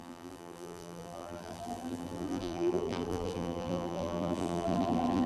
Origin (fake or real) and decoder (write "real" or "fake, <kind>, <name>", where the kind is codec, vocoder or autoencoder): fake, vocoder, BigVGAN v2